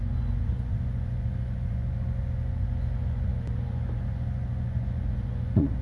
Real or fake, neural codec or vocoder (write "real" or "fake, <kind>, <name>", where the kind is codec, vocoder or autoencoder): fake, vocoder, Vocos